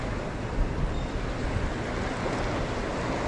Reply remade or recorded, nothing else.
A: recorded